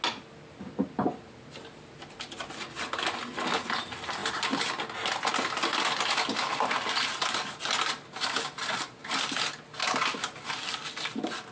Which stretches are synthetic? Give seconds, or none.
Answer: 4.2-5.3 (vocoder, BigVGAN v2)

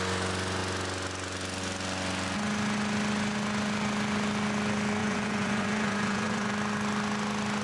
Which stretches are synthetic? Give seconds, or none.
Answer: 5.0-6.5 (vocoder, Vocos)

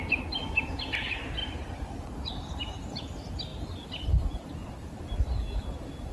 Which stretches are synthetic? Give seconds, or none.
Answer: none